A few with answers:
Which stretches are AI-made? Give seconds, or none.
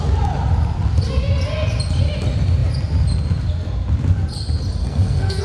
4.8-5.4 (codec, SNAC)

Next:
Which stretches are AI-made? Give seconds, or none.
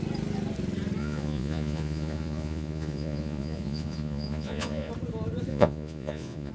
1.0-4.9 (vocoder, Vocos); 5.5-6.5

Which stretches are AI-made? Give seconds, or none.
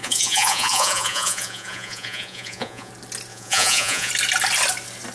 0.0-2.9 (vocoder, Vocos); 3.3-4.1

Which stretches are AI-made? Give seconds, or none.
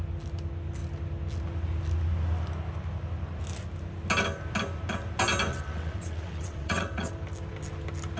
5.5-7.1 (vocoder, WaveNeXt)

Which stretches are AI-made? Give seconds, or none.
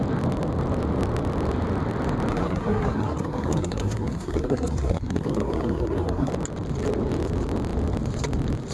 2.3-6.3 (codec, SNAC)